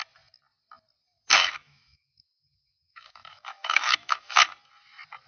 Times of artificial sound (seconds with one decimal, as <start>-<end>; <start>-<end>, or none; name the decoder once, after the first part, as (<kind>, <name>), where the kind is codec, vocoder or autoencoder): 1.3-4.5 (autoencoder, DAC-VAE)